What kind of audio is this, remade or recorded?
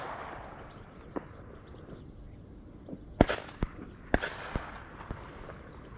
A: recorded